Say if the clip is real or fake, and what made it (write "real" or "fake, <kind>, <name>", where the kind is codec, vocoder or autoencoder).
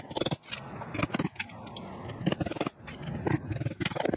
real